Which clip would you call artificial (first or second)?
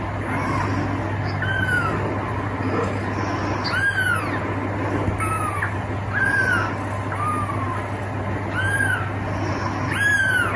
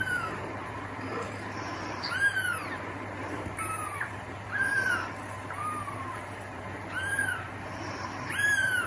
second